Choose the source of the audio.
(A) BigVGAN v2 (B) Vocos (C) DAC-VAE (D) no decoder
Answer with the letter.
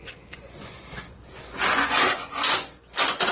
B